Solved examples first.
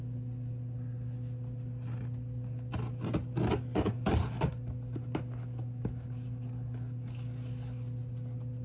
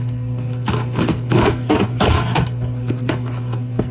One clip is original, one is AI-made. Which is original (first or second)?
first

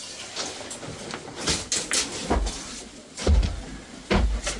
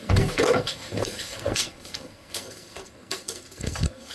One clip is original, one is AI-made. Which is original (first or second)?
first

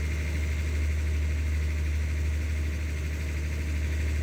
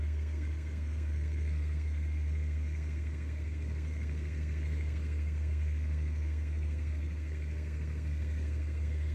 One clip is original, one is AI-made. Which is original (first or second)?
first